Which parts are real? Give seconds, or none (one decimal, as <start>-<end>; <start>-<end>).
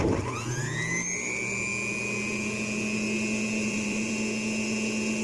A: 0.0-3.6; 4.1-5.2